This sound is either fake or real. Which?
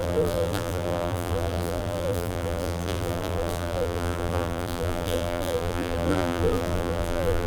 fake